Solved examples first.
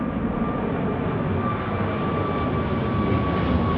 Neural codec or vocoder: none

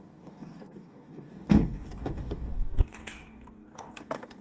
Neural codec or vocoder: codec, DAC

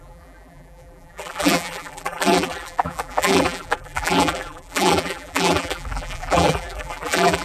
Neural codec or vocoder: vocoder, BigVGAN v2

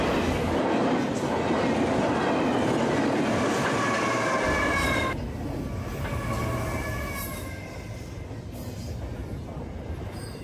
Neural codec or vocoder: none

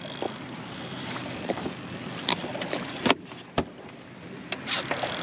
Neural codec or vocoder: none